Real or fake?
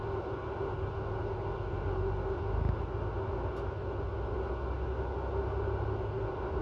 real